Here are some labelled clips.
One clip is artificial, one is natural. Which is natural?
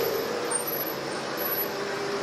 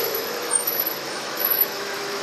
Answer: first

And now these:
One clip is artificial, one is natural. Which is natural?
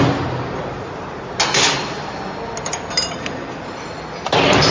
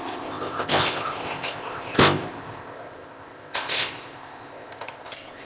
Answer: first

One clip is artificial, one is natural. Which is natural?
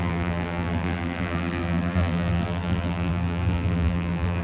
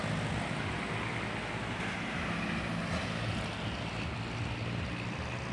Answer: second